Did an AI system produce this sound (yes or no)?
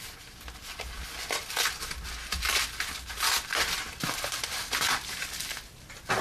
no